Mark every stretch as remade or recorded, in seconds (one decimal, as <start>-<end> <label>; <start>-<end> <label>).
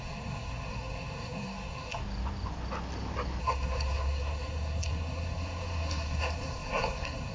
0.0-2.0 remade; 2.0-3.4 recorded; 3.4-7.3 remade